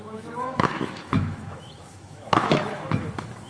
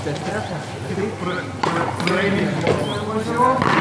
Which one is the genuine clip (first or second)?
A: second